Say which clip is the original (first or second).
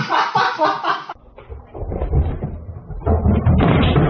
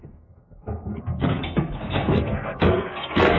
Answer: first